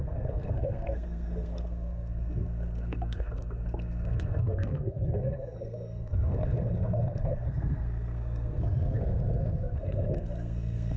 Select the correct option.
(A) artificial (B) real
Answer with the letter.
A